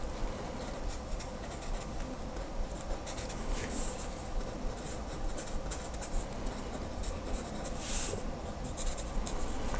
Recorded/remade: recorded